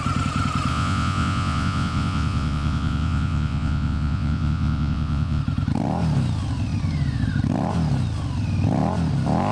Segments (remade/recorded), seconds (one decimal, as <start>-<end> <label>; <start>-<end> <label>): 0.0-0.7 recorded; 0.7-5.4 remade; 5.4-9.5 recorded